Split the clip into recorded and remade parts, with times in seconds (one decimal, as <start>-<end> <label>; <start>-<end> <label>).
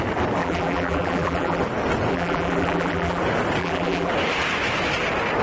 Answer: 0.0-0.4 recorded; 0.4-1.6 remade; 1.6-2.1 recorded; 2.1-3.2 remade; 3.2-3.6 recorded; 3.6-4.1 remade; 4.1-5.4 recorded